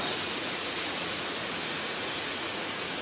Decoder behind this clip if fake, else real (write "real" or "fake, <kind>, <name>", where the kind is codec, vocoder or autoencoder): fake, vocoder, Vocos